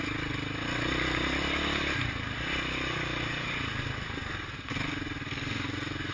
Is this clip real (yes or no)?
yes